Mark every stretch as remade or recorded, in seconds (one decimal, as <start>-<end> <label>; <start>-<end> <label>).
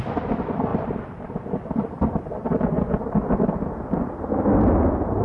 0.0-0.7 recorded; 0.7-3.4 remade; 3.4-5.2 recorded